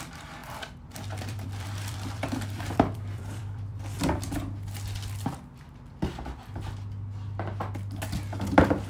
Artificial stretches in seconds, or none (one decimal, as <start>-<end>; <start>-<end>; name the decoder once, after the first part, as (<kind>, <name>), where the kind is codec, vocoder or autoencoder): 0.4-4.0 (vocoder, BigVGAN v2)